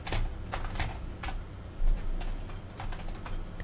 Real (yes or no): yes